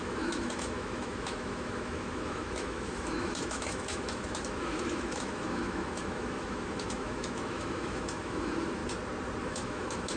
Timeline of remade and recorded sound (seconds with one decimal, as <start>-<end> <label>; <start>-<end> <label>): 0.0-8.8 remade; 8.8-9.4 recorded; 9.4-10.2 remade